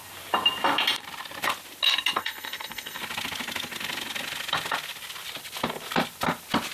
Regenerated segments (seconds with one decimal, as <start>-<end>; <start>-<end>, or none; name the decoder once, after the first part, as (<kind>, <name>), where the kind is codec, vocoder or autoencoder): 2.2-3.0 (codec, SNAC)

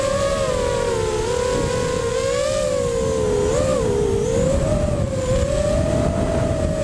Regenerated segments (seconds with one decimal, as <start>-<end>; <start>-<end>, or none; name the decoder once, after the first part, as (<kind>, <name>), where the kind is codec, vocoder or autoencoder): none

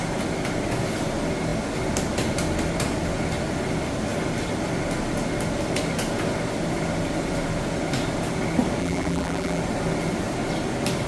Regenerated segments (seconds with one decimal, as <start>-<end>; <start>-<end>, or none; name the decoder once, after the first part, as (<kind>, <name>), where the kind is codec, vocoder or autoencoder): 8.8-9.6 (vocoder, BigVGAN v2)